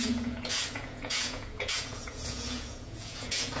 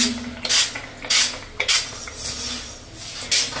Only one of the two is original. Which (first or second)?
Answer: second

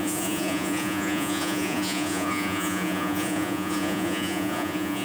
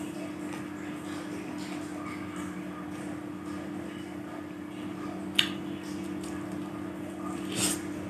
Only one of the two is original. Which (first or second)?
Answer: second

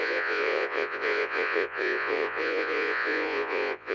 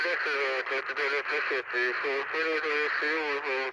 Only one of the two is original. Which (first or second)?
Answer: second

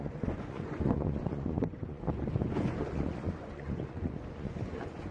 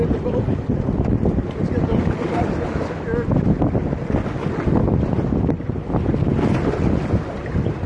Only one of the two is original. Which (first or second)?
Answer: second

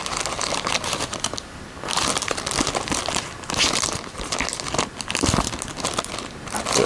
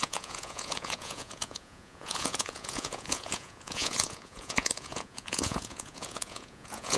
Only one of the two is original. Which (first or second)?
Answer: first